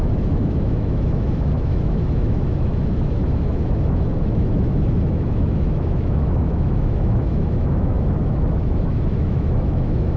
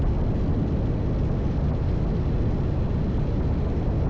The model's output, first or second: first